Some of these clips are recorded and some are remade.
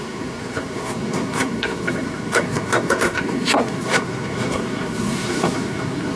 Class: remade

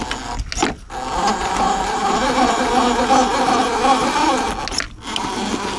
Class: recorded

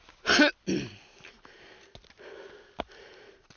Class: recorded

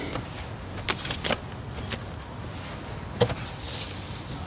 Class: recorded